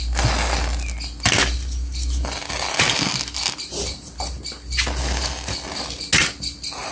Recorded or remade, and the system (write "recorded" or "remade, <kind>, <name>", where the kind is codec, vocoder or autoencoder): recorded